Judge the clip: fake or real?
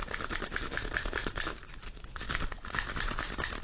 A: real